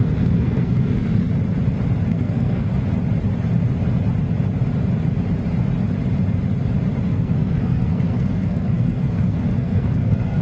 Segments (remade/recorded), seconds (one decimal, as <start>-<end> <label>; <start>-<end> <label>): 0.0-1.2 remade; 1.2-2.1 recorded; 2.1-2.7 remade; 2.7-7.1 recorded; 7.1-10.4 remade